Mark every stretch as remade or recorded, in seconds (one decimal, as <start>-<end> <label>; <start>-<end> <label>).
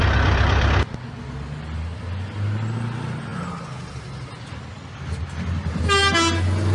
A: 0.0-6.7 recorded